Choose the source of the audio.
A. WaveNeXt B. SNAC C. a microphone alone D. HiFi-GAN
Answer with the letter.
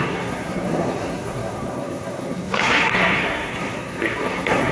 B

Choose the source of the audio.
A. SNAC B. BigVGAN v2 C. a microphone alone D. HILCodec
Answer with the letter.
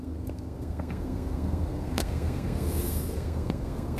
A